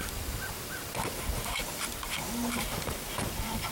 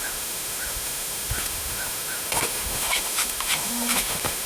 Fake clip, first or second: second